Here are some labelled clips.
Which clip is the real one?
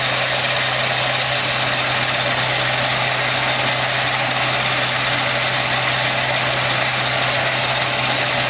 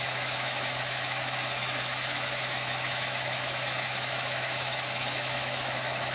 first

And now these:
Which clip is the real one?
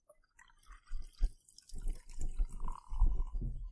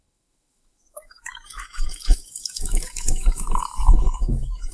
first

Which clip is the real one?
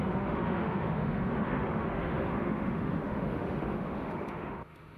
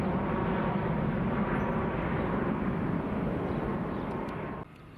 second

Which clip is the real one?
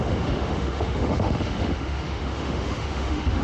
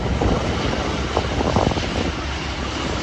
second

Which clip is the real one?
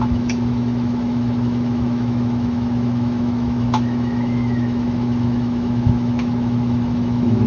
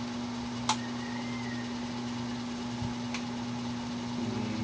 second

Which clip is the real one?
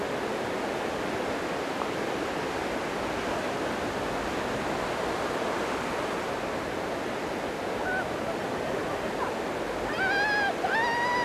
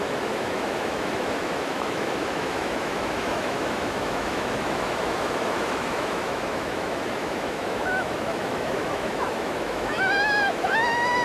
first